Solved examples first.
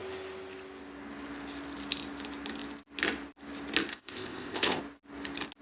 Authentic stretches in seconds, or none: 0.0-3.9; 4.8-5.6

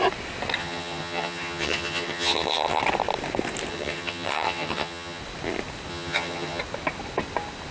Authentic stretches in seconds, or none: 0.0-0.6; 2.8-3.7; 5.2-5.9; 6.6-7.7